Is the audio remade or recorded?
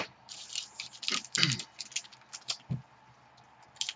recorded